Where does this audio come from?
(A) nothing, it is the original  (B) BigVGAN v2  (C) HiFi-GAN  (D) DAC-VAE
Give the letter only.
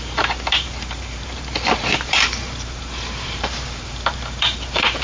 B